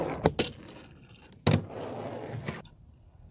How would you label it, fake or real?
real